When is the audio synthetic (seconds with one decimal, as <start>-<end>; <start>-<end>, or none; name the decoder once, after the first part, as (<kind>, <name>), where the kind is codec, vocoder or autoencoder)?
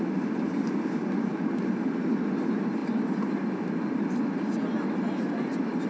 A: none